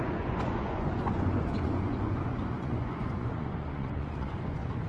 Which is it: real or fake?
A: fake